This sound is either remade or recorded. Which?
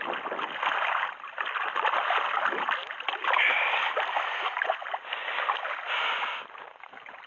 recorded